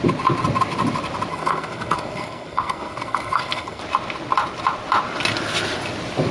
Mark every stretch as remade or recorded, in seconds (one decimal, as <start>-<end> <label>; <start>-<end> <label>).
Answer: 0.0-1.3 recorded; 1.3-3.8 remade; 3.8-6.3 recorded